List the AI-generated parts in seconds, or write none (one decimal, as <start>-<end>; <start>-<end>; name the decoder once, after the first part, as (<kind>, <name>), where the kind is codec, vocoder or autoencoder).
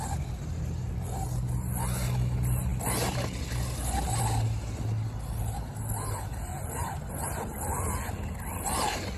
none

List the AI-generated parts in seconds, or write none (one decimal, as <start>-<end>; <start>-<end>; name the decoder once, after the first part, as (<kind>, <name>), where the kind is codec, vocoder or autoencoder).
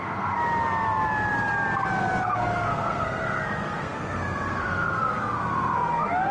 0.0-0.4 (codec, SNAC); 2.2-6.3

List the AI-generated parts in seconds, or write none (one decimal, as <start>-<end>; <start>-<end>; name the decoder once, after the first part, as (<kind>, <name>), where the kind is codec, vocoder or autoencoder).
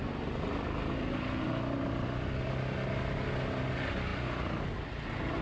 none